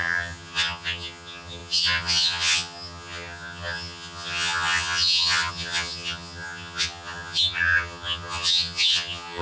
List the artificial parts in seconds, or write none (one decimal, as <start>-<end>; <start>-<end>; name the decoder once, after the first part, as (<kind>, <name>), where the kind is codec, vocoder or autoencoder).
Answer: 0.0-9.4 (vocoder, HiFi-GAN)